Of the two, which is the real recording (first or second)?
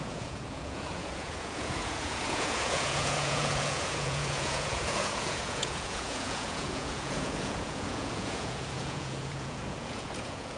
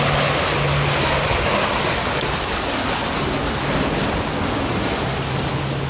second